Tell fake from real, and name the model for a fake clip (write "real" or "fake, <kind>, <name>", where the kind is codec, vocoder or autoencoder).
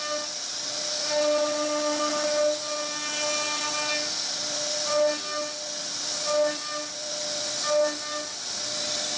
real